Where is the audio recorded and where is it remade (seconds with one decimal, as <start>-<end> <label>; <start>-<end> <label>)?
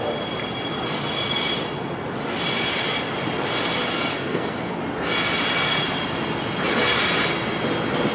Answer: 0.0-4.1 recorded; 4.1-4.8 remade; 4.8-8.1 recorded